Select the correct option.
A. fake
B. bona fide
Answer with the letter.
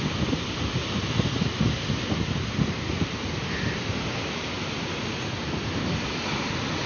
B